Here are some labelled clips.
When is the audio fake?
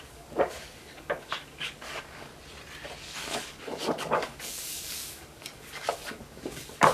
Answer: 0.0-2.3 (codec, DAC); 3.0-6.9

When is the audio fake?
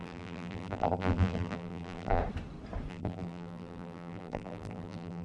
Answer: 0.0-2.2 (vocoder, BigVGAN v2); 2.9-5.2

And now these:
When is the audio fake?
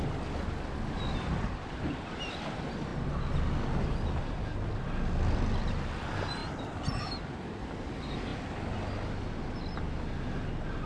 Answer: none